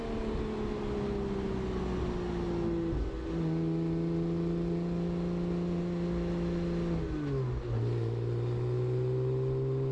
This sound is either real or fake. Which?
real